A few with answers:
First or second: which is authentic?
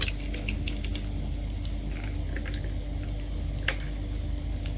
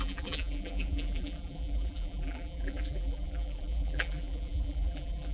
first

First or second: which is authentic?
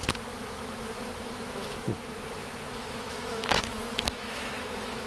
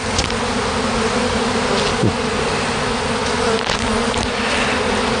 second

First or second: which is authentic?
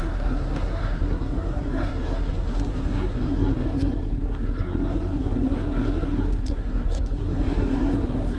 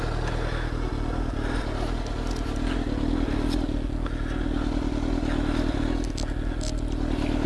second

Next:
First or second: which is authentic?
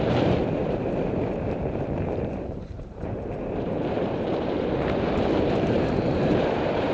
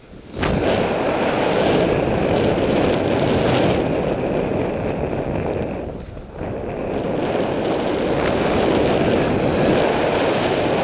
second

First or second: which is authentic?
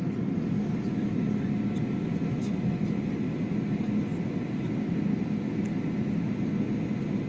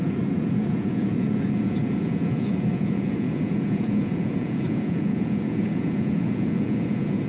first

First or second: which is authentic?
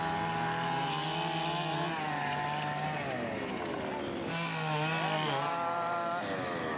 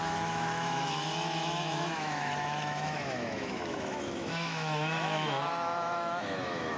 first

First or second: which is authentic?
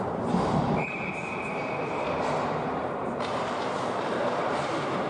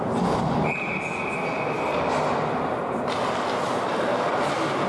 second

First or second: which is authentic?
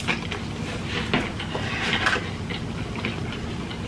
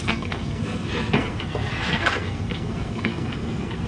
first